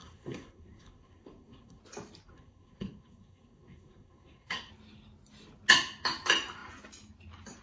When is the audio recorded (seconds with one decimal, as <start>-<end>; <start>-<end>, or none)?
1.8-2.3; 4.7-7.6